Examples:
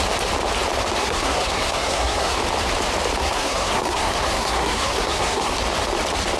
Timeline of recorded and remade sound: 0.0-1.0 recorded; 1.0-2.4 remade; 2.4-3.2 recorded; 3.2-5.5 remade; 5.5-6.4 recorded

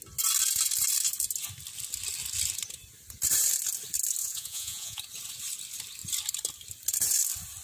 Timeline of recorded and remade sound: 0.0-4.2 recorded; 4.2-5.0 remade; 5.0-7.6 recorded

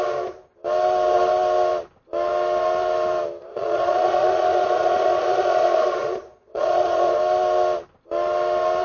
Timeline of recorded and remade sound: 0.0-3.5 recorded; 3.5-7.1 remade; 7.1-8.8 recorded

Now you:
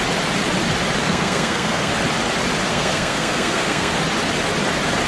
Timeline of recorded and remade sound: 0.0-1.0 recorded; 1.0-1.9 remade; 1.9-2.7 recorded; 2.7-3.9 remade; 3.9-5.1 recorded

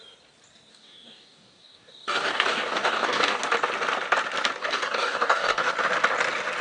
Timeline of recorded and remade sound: 0.0-0.7 recorded; 0.7-3.4 remade; 3.4-4.6 recorded; 4.6-5.7 remade; 5.7-6.6 recorded